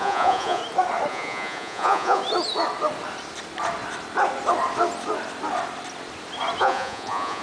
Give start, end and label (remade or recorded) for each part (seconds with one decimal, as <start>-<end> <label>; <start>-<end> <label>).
0.0-0.6 remade; 0.6-1.1 recorded; 1.1-2.2 remade; 2.2-6.6 recorded; 6.6-7.4 remade